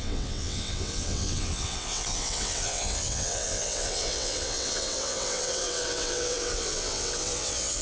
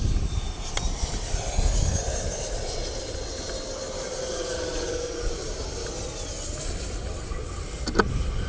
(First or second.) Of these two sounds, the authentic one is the second